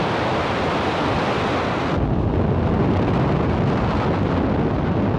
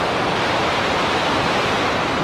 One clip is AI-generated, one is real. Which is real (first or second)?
first